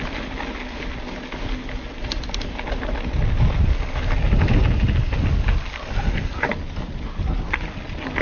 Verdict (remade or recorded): recorded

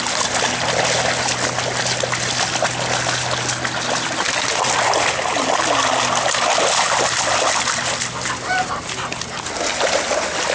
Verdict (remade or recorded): recorded